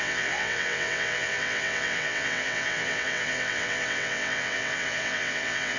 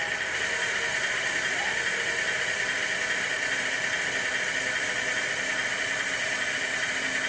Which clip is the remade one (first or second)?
first